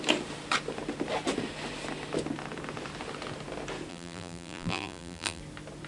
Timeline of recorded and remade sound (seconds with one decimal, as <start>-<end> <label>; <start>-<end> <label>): 0.0-3.9 recorded; 3.9-5.4 remade; 5.4-5.9 recorded